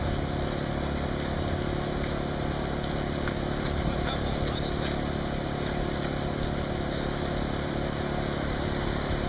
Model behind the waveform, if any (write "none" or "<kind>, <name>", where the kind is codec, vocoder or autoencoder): none